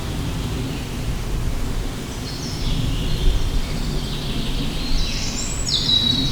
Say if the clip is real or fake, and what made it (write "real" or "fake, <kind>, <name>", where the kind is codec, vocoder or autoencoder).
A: real